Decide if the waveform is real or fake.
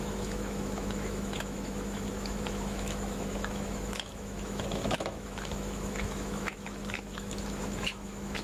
fake